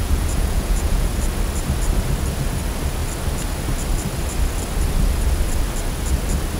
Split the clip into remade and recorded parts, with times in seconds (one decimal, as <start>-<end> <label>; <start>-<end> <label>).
0.0-1.1 remade; 1.1-6.6 recorded

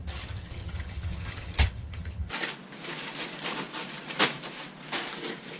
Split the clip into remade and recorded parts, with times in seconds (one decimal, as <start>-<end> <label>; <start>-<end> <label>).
0.0-2.3 remade; 2.3-5.6 recorded

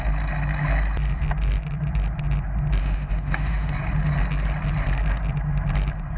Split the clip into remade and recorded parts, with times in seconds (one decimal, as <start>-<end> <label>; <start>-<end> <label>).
0.0-2.8 recorded; 2.8-3.7 remade; 3.7-6.2 recorded

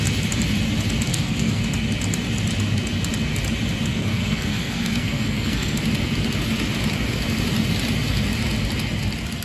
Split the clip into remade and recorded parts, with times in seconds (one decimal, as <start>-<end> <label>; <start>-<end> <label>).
0.0-1.1 recorded; 1.1-1.6 remade; 1.6-3.9 recorded; 3.9-5.8 remade; 5.8-9.4 recorded